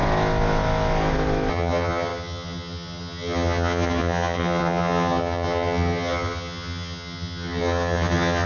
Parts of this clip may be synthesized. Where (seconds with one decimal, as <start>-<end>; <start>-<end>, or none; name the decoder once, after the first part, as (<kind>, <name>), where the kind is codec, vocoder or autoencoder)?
1.5-8.5 (vocoder, HiFi-GAN)